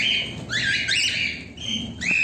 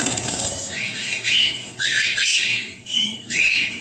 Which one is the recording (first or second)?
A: first